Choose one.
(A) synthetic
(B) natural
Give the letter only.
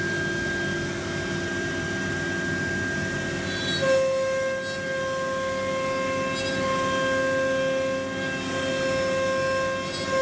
B